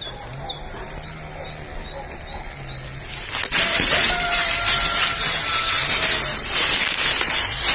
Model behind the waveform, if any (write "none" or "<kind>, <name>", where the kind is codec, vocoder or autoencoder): none